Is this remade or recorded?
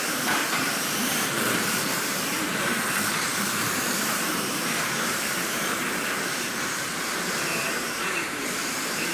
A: remade